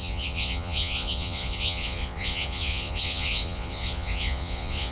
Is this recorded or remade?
remade